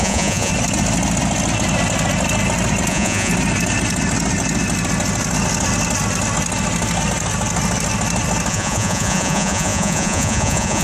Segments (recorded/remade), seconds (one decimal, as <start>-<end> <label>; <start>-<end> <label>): 0.0-0.5 remade; 0.5-2.9 recorded; 2.9-3.3 remade; 3.3-8.5 recorded; 8.5-10.8 remade